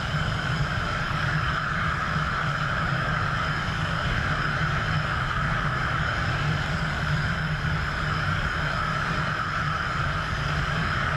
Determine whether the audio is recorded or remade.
remade